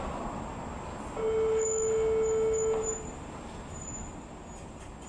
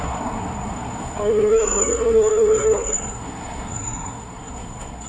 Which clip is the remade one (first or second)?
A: second